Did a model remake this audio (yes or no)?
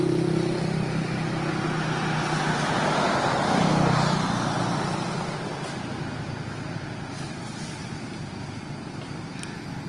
no